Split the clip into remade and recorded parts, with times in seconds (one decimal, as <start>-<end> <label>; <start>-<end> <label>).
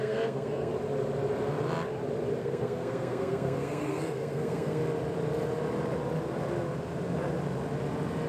0.0-0.7 remade; 0.7-2.4 recorded; 2.4-4.8 remade; 4.8-8.3 recorded